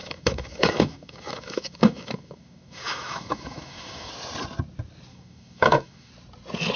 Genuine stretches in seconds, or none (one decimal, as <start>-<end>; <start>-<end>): 4.1-5.1; 6.1-6.8